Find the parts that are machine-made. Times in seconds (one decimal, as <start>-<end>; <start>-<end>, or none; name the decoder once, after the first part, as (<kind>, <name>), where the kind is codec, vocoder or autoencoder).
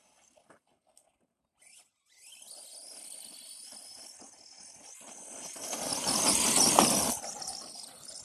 none